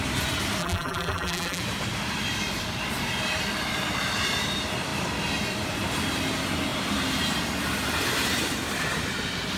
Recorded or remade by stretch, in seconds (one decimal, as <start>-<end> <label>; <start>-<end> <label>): 0.0-0.6 recorded; 0.6-1.6 remade; 1.6-9.6 recorded